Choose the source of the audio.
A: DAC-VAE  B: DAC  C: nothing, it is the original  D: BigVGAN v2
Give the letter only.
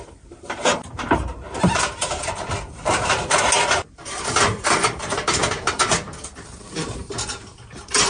D